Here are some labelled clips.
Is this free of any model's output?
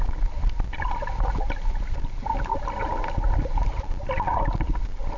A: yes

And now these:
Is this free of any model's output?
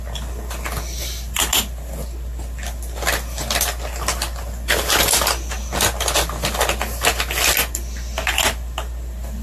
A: yes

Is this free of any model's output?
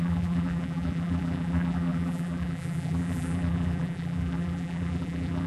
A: no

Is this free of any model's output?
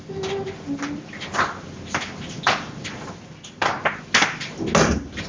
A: yes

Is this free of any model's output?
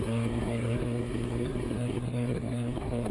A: no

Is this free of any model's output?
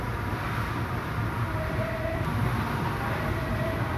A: yes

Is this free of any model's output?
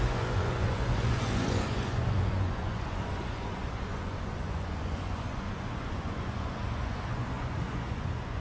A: no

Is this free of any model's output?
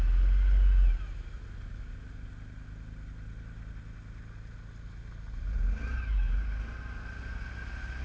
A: yes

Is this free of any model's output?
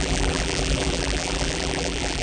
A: no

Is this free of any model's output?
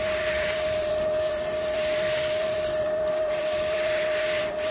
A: no